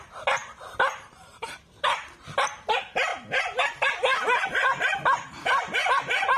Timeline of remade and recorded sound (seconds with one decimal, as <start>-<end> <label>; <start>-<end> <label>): 0.0-0.4 recorded; 0.4-2.1 remade; 2.1-6.4 recorded